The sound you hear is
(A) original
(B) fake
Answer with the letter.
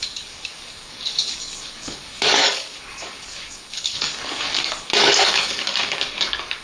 B